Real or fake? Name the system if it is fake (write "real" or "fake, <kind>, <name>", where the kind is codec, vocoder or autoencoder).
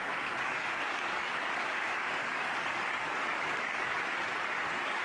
fake, codec, DAC